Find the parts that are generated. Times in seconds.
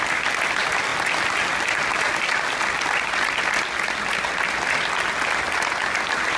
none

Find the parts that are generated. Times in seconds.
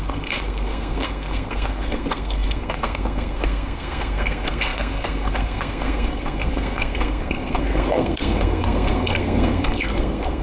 0.0-10.4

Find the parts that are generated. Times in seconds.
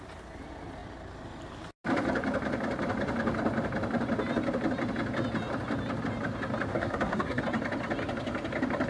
6.7-7.4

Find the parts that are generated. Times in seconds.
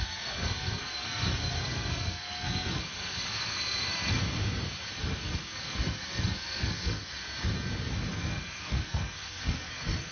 0.0-4.2; 5.0-7.2; 8.1-10.1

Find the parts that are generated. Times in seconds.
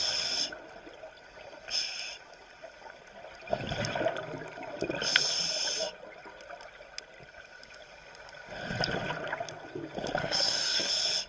10.2-10.9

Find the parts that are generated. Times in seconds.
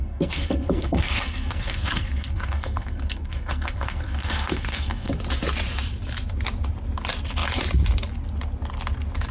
0.0-5.1